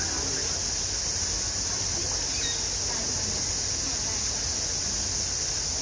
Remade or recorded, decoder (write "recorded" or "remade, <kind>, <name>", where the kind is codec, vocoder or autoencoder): recorded